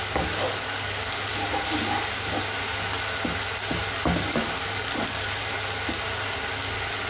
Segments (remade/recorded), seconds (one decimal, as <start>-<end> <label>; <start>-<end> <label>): 0.0-1.3 remade; 1.3-4.3 recorded; 4.3-5.4 remade; 5.4-7.1 recorded